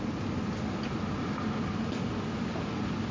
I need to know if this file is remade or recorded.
recorded